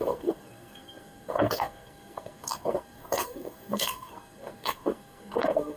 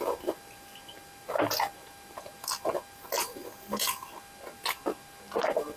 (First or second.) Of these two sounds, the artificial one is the first